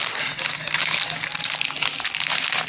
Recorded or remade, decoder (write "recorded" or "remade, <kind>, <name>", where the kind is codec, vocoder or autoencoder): recorded